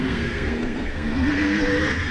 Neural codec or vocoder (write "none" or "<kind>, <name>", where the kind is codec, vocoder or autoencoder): codec, SNAC